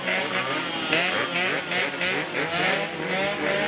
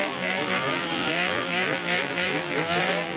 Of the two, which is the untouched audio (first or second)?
first